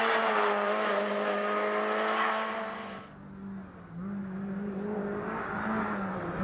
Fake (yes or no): no